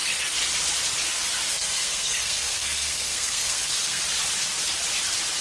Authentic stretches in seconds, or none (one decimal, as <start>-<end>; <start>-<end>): 0.0-1.5; 4.0-5.4